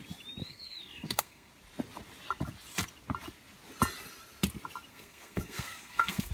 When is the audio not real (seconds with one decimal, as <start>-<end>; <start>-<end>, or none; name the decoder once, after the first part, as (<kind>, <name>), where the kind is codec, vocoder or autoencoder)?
0.4-1.5 (codec, SNAC); 4.9-6.3